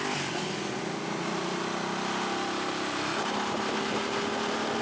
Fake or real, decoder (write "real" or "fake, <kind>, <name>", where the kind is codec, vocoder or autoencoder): real